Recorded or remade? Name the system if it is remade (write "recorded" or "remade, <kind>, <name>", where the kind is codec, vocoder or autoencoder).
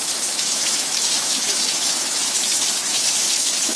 remade, autoencoder, DAC-VAE